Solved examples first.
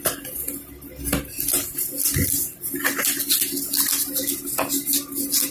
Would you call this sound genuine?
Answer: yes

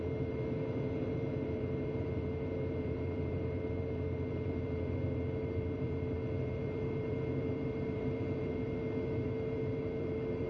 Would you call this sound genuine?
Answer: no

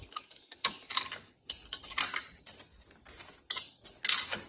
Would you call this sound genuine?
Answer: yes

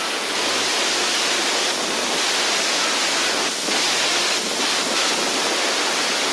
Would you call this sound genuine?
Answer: yes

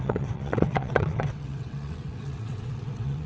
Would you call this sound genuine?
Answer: no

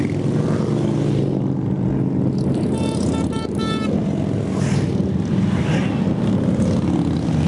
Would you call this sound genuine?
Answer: yes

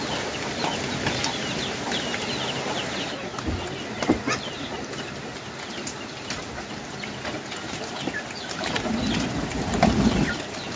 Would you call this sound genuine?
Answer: yes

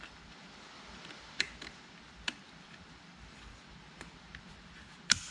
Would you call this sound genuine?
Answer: no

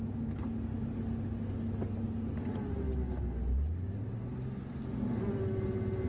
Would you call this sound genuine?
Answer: yes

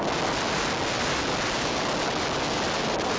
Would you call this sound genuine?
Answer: yes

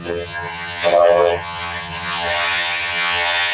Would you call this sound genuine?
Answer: no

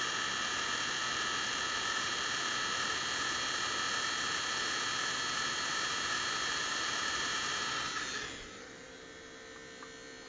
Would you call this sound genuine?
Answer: yes